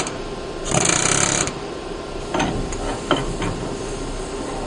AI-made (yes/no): no